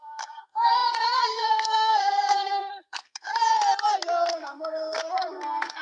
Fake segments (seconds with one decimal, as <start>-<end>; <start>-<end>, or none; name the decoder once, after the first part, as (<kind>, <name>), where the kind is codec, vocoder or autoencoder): 0.0-3.3 (codec, SNAC); 4.3-5.8